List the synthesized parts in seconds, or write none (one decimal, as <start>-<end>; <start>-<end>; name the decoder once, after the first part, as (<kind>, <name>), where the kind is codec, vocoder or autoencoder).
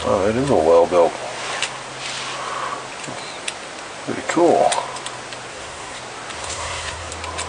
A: 5.5-6.0 (codec, SNAC); 6.4-7.1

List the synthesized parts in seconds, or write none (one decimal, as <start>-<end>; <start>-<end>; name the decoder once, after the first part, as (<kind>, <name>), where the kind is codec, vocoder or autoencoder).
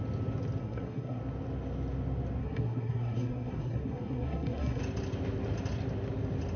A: 0.6-1.2 (codec, SNAC); 2.4-4.8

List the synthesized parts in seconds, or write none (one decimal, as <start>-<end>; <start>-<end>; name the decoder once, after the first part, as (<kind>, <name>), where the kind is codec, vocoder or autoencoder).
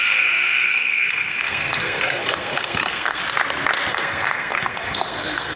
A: 0.0-3.2 (codec, SNAC); 3.9-5.6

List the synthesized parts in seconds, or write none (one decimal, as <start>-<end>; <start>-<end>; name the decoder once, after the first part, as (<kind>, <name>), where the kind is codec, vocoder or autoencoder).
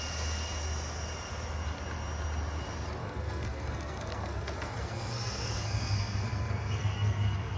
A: 3.0-7.6 (codec, SNAC)